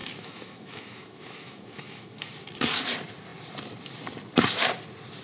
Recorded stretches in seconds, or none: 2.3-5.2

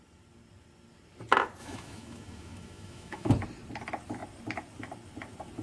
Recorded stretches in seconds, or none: 0.0-1.6; 3.3-5.6

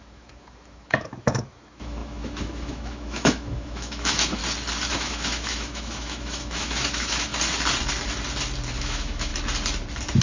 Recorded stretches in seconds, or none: 4.4-4.9; 7.3-8.8; 9.3-10.2

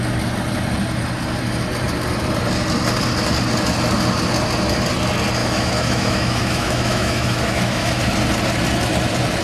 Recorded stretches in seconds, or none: 0.0-5.4; 8.0-9.4